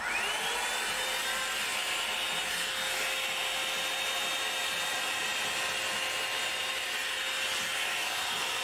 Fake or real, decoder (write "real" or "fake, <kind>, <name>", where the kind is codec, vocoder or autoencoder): real